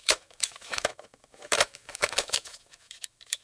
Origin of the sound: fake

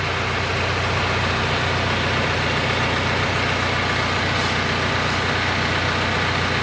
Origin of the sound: real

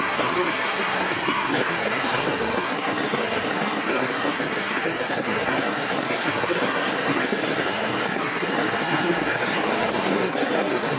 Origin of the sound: fake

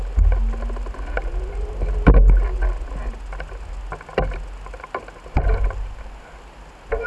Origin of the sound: real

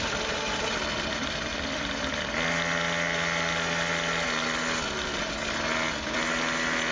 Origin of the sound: real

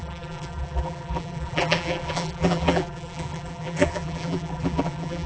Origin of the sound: fake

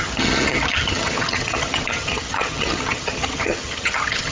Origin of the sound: fake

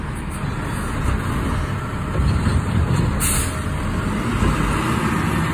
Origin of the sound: real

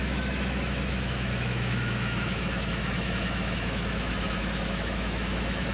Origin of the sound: fake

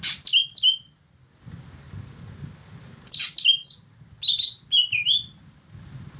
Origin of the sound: real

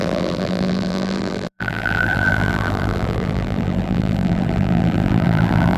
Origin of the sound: fake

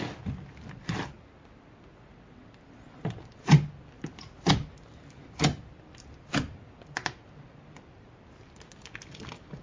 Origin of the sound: real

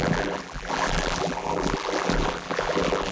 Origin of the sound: fake